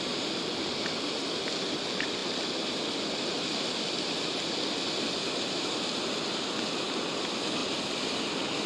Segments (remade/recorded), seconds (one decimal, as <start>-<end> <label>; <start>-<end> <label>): 0.0-8.7 recorded